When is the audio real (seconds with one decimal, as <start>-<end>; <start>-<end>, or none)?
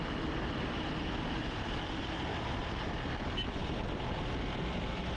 0.0-5.2